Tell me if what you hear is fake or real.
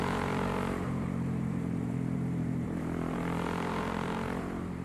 fake